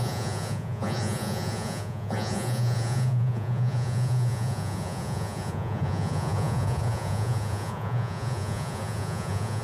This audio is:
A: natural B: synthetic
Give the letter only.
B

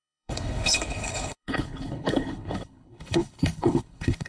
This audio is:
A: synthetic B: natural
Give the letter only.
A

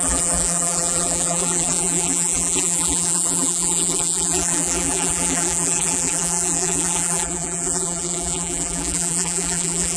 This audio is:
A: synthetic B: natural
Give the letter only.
A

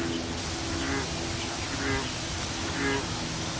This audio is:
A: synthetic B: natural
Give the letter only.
B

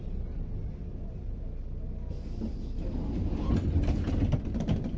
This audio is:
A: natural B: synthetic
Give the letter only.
A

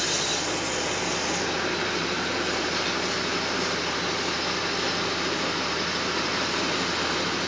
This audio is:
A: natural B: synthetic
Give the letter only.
A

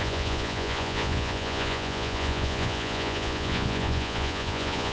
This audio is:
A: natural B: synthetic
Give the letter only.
B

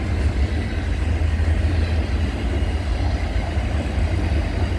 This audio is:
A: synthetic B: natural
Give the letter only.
B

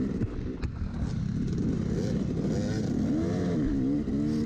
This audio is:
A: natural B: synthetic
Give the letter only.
A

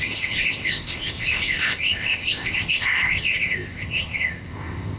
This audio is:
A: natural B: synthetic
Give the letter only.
B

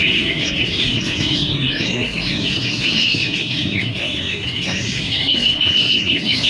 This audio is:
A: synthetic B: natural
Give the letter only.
A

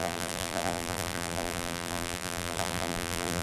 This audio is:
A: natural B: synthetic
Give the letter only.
B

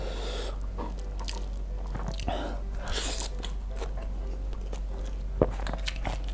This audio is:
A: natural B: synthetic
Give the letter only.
A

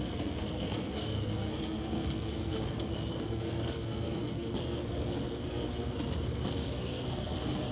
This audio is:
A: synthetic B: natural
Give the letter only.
A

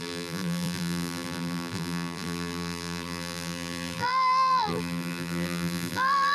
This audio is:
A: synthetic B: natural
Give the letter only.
A